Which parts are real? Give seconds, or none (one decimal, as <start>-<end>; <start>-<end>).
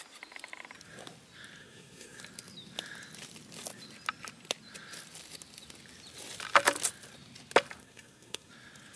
0.0-1.6; 2.2-7.8; 8.5-9.0